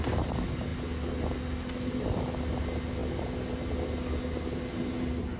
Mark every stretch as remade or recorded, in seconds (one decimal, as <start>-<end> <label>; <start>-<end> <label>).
0.0-5.4 recorded